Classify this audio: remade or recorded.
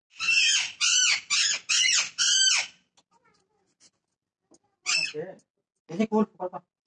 recorded